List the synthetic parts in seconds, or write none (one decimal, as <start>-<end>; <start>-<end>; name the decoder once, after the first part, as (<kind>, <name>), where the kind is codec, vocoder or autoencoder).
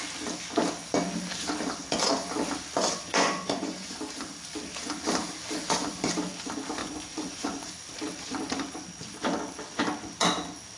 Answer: 3.1-4.0 (vocoder, Vocos); 6.8-7.7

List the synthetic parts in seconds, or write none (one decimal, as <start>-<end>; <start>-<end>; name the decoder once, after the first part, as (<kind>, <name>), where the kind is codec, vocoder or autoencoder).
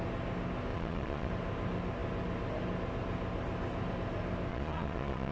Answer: 0.7-1.3 (vocoder, Vocos); 4.5-5.3